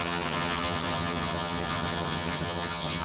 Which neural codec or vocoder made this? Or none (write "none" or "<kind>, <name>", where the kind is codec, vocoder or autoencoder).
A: vocoder, HiFi-GAN